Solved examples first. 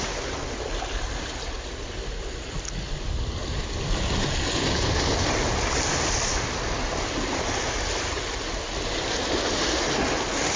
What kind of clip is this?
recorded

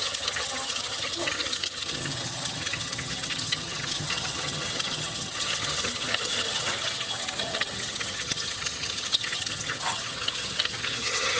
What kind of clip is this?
remade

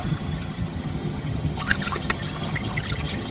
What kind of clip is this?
remade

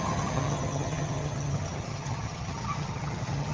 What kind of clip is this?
remade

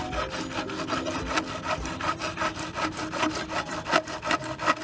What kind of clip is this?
recorded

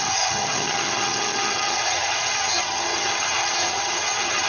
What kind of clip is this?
remade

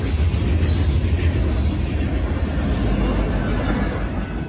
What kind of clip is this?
recorded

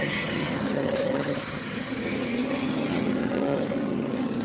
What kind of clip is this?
remade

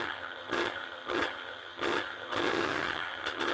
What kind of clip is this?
remade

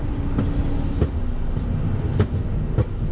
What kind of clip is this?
recorded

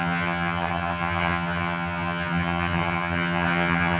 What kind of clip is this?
remade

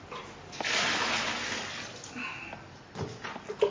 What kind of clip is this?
recorded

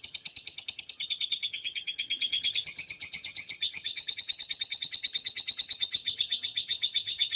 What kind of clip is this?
remade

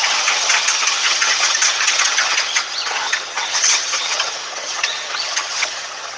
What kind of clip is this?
remade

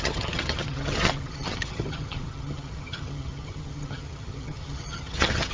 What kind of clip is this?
remade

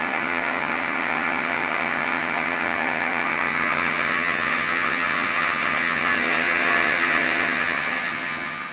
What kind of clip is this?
remade